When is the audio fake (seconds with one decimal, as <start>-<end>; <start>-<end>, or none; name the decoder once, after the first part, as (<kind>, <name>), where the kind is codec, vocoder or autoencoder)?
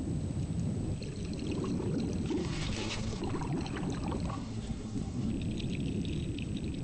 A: 2.4-3.2 (codec, SNAC); 4.3-5.3